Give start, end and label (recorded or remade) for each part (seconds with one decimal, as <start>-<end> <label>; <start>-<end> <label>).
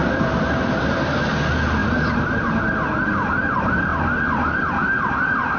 0.0-1.3 remade; 1.3-1.8 recorded; 1.8-2.6 remade; 2.6-5.6 recorded